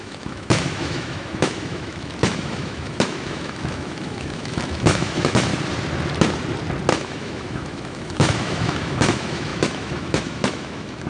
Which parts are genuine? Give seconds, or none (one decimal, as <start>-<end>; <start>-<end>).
5.5-6.9